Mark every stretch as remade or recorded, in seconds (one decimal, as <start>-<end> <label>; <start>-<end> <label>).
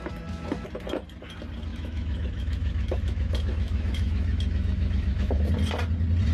0.0-1.7 recorded; 1.7-5.5 remade; 5.5-6.3 recorded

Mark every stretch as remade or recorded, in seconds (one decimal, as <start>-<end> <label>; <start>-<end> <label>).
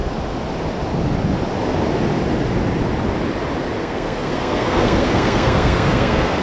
0.0-3.8 recorded; 3.8-6.4 remade